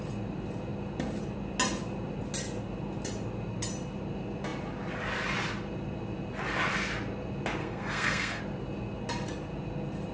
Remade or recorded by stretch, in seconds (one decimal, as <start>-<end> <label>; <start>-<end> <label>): 0.0-7.6 recorded; 7.6-8.4 remade; 8.4-10.1 recorded